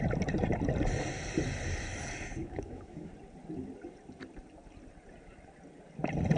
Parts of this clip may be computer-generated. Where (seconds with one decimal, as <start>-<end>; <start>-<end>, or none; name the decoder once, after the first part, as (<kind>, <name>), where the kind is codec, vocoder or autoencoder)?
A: 2.4-3.1 (autoencoder, DAC-VAE)